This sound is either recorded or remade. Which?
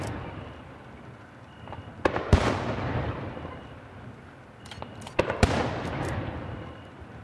recorded